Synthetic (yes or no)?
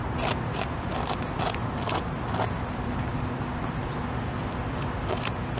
no